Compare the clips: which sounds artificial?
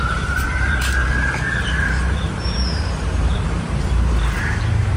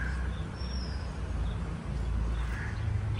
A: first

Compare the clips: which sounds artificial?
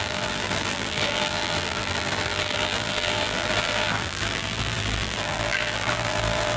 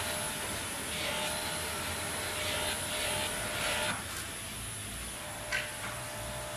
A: first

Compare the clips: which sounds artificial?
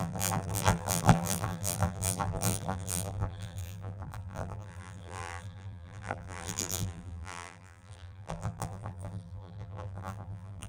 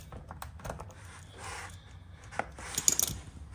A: first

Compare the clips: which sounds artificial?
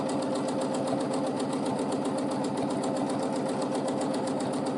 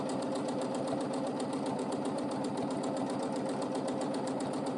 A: second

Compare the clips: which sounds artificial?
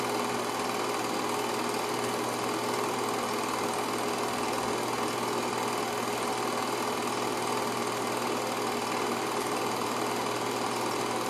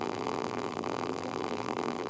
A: second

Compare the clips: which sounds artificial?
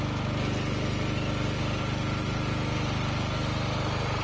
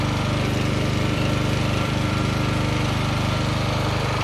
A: second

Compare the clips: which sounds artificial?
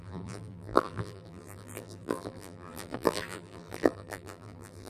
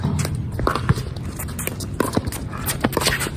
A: first